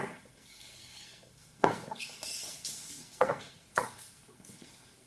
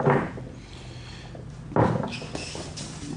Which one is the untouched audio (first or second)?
second